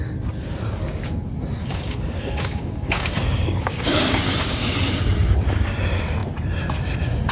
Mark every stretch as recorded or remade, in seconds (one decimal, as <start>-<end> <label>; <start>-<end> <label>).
0.0-1.6 recorded; 1.6-4.6 remade; 4.6-7.3 recorded